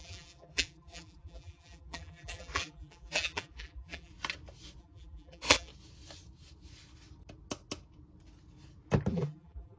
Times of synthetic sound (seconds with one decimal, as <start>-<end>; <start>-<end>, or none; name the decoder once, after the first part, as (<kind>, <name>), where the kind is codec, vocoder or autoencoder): 0.0-4.1 (vocoder, BigVGAN v2); 4.8-5.7; 9.1-9.8